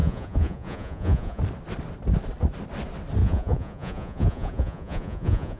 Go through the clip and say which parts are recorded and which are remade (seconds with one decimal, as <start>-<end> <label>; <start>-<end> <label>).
0.0-1.4 remade; 1.4-3.2 recorded; 3.2-5.6 remade